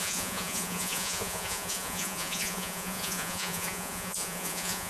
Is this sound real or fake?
fake